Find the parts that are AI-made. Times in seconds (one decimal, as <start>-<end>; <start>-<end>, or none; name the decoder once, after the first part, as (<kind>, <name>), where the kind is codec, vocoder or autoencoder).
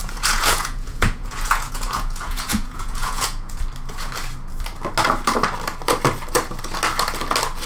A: 0.0-3.6 (vocoder, Vocos)